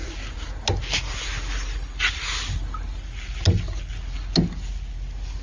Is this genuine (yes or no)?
yes